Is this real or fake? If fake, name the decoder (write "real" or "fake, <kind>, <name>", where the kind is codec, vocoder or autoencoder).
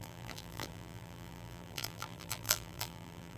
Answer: fake, vocoder, BigVGAN v2